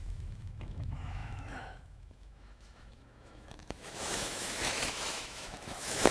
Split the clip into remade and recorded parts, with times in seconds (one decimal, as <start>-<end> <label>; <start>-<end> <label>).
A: 0.0-6.1 remade